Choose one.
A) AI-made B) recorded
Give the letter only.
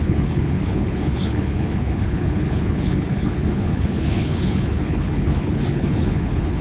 A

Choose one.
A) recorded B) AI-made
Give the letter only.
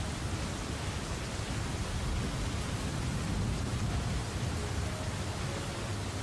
A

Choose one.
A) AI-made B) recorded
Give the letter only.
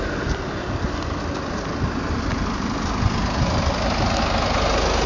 B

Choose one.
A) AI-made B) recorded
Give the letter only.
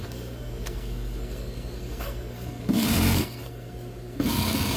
A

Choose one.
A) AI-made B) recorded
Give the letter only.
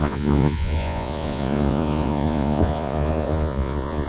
A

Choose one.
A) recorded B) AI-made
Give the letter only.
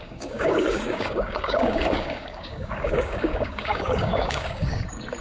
B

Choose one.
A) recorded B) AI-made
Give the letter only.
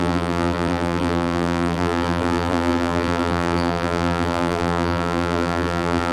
B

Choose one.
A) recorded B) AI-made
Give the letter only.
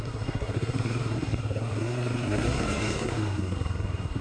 B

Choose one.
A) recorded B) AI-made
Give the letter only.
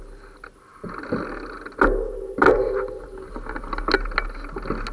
A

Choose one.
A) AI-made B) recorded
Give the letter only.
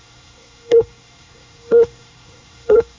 A